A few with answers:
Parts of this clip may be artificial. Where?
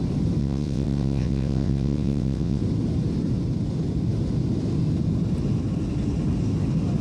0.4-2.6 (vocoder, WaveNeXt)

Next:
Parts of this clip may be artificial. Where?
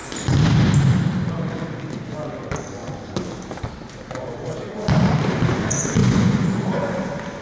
6.0-7.0 (vocoder, Vocos)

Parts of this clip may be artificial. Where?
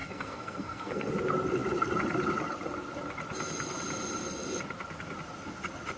0.0-1.1 (codec, SNAC)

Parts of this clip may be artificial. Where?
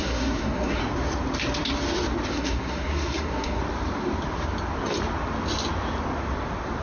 0.0-0.8 (codec, SNAC); 2.3-3.6